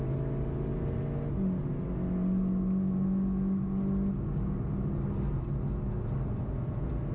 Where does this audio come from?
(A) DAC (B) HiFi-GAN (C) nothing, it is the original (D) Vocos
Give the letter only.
C